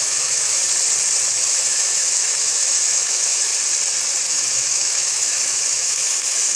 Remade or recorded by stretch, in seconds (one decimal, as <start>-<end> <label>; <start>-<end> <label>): 0.0-0.6 remade; 0.6-1.3 recorded; 1.3-3.5 remade; 3.5-4.3 recorded; 4.3-6.6 remade